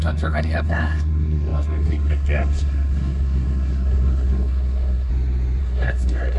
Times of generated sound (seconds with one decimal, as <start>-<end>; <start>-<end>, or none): 0.0-5.1; 5.6-6.4